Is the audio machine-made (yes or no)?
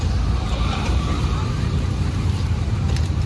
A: yes